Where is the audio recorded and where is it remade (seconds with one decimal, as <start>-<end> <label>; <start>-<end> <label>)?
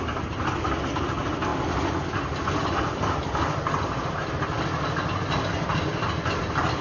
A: 0.0-6.8 recorded